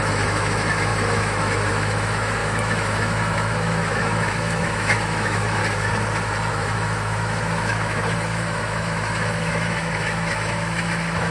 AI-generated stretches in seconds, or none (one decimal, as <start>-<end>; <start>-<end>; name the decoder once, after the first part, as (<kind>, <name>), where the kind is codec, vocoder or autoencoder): 0.0-5.6 (autoencoder, DAC-VAE); 6.5-11.3

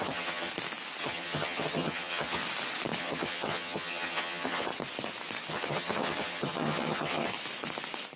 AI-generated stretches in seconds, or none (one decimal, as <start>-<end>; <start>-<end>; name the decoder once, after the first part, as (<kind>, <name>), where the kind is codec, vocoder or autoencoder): 0.0-0.5 (vocoder, HiFi-GAN); 1.0-2.4; 3.0-4.7; 5.5-7.3

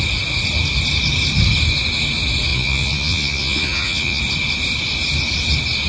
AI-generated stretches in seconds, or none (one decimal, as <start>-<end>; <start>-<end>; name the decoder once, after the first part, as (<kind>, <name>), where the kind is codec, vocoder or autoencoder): 2.5-4.2 (vocoder, Vocos)

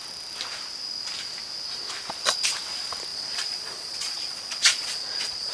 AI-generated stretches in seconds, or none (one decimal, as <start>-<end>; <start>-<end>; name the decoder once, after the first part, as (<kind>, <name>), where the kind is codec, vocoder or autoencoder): 3.1-5.5 (vocoder, Vocos)